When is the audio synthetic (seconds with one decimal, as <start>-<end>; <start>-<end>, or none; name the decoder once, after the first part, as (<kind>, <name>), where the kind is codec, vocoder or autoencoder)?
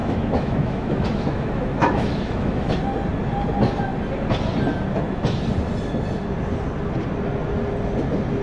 0.0-2.7 (autoencoder, DAC-VAE)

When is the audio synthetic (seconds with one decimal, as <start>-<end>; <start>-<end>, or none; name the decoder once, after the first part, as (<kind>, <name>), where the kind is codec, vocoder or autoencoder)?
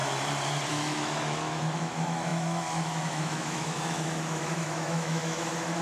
0.7-5.8 (autoencoder, DAC-VAE)